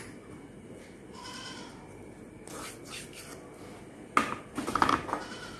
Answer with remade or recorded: recorded